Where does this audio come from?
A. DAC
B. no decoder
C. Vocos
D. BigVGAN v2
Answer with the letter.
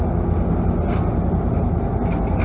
B